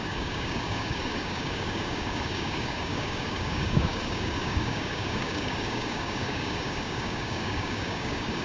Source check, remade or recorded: remade